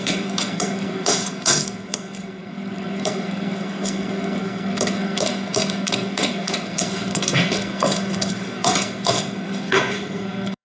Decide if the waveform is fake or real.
fake